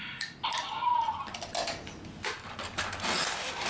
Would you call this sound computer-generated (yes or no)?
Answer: no